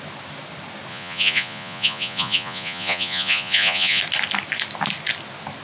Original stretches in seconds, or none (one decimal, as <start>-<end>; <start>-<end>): 0.0-0.9; 4.0-5.6